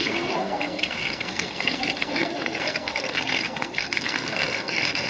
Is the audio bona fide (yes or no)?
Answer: no